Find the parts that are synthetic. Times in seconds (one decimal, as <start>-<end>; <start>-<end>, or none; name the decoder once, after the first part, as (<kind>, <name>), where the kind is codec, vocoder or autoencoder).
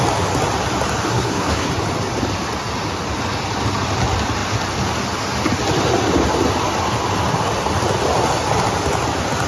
1.1-1.7 (codec, SNAC)